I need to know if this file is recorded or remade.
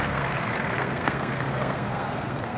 remade